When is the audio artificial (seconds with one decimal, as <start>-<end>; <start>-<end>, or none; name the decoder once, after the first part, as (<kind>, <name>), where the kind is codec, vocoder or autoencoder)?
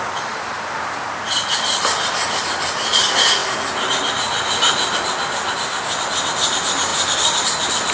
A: none